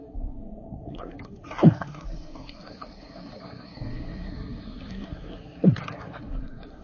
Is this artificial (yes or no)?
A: yes